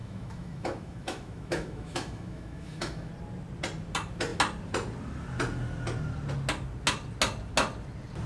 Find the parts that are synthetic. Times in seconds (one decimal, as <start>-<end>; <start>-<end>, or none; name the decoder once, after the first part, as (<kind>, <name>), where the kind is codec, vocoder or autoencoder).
0.0-3.1 (autoencoder, DAC-VAE)